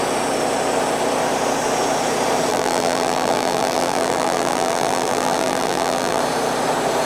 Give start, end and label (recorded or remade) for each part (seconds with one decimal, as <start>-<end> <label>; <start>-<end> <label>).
0.0-2.5 recorded; 2.5-6.2 remade; 6.2-7.1 recorded